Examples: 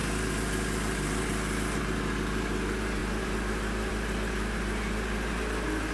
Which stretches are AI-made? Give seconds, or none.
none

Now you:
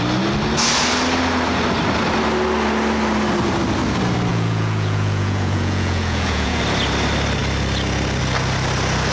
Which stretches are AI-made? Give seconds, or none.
4.3-6.6 (vocoder, Vocos)